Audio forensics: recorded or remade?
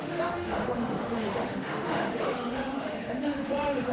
remade